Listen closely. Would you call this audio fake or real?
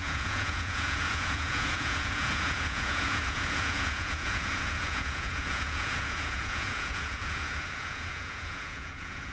fake